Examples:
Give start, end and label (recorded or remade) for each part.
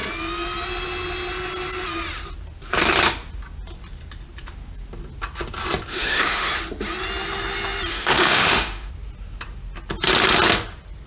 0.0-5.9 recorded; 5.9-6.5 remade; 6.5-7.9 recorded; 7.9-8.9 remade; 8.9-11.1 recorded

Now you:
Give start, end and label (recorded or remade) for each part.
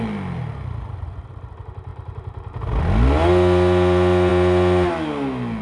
0.0-5.6 recorded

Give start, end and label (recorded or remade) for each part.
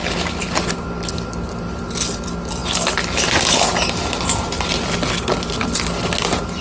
0.0-6.6 recorded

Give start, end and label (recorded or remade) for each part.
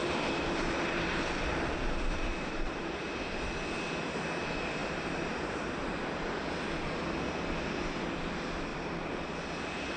0.0-3.0 remade; 3.0-4.8 recorded; 4.8-6.5 remade; 6.5-8.7 recorded; 8.7-9.2 remade; 9.2-10.0 recorded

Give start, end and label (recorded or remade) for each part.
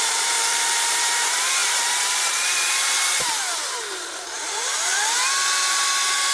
0.0-6.3 remade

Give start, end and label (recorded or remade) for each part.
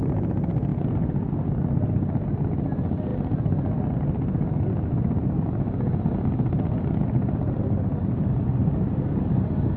0.0-0.7 remade; 0.7-1.3 recorded; 1.3-3.1 remade; 3.1-6.1 recorded; 6.1-9.8 remade